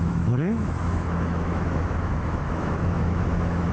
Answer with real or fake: fake